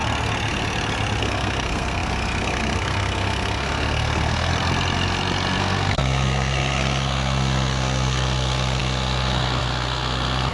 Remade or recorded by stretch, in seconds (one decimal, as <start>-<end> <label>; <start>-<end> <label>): 0.0-1.2 recorded; 1.2-4.5 remade; 4.5-5.6 recorded; 5.6-10.5 remade